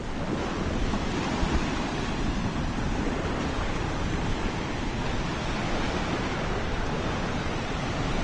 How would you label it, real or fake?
real